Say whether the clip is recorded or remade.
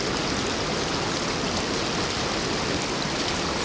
recorded